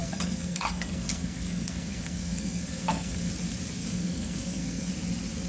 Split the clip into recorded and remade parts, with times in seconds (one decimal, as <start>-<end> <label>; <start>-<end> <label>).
0.0-3.3 remade; 3.3-3.8 recorded; 3.8-4.9 remade; 4.9-5.5 recorded

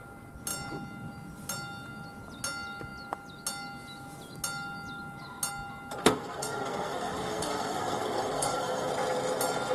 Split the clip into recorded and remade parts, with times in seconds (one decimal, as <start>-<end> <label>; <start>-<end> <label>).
0.0-6.0 recorded; 6.0-8.9 remade; 8.9-9.7 recorded

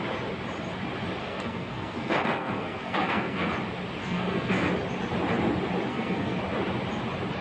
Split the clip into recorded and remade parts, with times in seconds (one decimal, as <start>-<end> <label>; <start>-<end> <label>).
0.0-1.2 recorded; 1.2-3.5 remade; 3.5-4.0 recorded; 4.0-4.7 remade; 4.7-5.9 recorded; 5.9-6.4 remade; 6.4-7.4 recorded

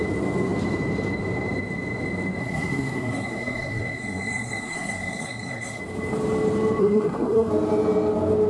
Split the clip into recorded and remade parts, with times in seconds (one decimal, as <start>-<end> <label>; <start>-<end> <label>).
0.0-2.4 recorded; 2.4-5.8 remade; 5.8-6.8 recorded; 6.8-7.5 remade; 7.5-8.5 recorded